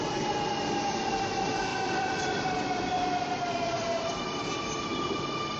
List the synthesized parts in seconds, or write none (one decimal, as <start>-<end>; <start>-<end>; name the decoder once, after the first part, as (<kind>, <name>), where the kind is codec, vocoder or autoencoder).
1.7-4.5 (vocoder, BigVGAN v2)